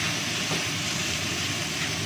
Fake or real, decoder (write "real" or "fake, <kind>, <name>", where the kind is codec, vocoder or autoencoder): real